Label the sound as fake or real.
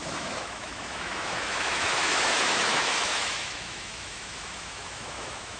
fake